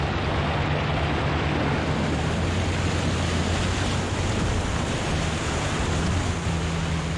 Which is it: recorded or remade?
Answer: recorded